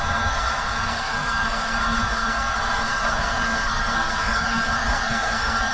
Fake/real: fake